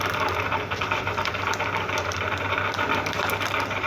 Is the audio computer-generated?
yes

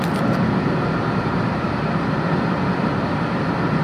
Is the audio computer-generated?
yes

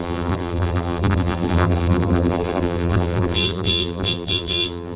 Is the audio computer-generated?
yes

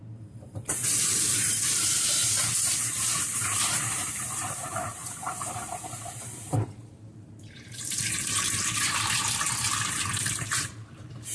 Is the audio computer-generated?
yes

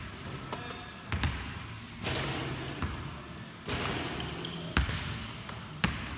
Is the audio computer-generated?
no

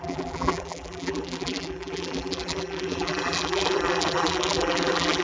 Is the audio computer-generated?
yes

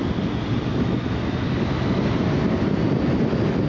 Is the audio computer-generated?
no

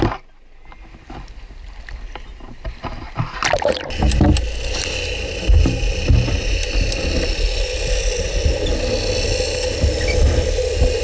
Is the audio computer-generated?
no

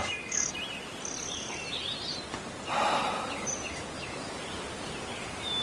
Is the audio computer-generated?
no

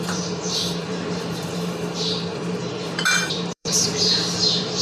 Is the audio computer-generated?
yes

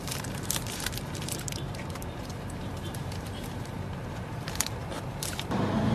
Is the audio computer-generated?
yes